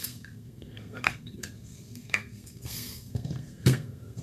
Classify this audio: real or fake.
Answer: fake